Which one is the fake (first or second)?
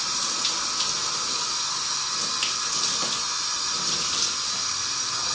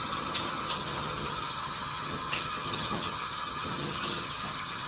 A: second